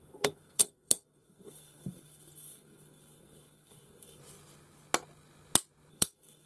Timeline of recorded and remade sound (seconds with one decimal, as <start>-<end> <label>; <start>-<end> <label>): 0.0-4.2 remade; 4.2-5.9 recorded; 5.9-6.5 remade